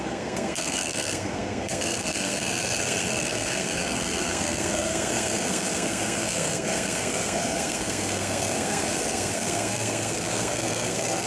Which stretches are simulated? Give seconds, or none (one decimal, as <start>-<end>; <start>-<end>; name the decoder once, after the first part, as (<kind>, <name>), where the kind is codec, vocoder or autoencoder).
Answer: 0.0-11.3 (codec, SNAC)